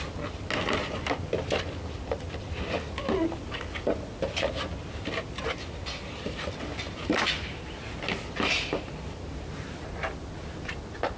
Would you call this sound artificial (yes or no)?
no